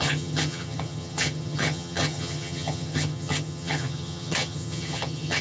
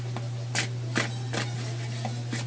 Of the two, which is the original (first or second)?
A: second